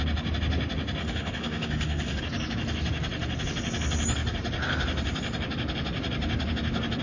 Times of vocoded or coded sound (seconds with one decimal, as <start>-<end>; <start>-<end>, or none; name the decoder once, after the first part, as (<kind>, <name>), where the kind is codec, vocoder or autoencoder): 1.0-2.2 (autoencoder, DAC-VAE)